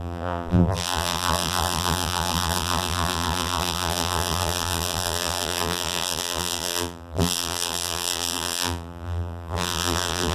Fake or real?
fake